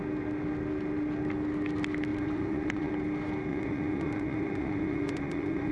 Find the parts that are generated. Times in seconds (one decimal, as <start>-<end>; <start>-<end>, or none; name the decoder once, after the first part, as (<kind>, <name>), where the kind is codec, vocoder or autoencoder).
2.1-2.9 (vocoder, Vocos); 3.5-5.7